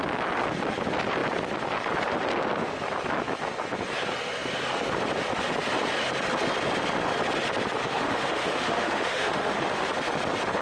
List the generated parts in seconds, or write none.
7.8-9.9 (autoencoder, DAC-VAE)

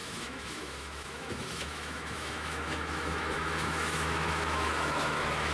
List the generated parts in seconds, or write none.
0.0-5.5 (autoencoder, DAC-VAE)

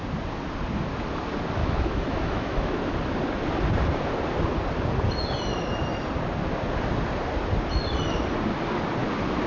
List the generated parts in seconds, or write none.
1.6-2.7 (autoencoder, DAC-VAE)

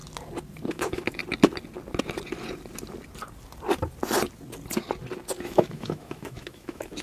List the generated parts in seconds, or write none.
0.7-1.2 (autoencoder, DAC-VAE); 5.4-7.0

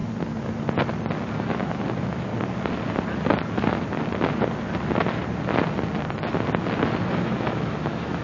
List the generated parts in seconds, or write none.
1.4-2.3 (autoencoder, DAC-VAE); 7.2-8.2

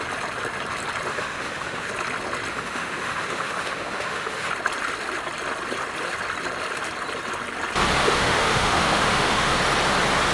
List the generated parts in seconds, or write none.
1.1-1.9 (autoencoder, DAC-VAE); 2.5-4.5; 8.0-9.6